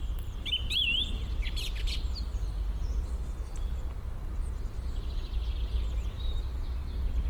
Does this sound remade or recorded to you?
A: recorded